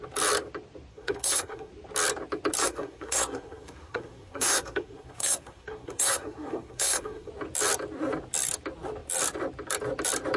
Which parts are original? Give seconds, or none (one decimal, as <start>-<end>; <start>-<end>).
0.0-0.9; 1.7-2.6; 7.3-10.4